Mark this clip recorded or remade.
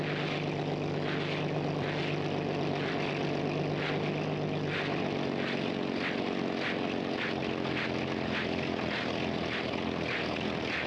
recorded